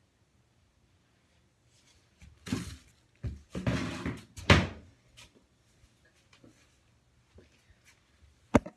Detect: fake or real real